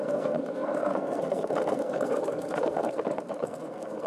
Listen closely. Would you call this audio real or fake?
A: fake